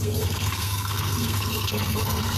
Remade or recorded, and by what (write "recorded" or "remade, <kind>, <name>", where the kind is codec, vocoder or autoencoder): remade, codec, SNAC